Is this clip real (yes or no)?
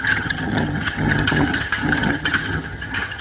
no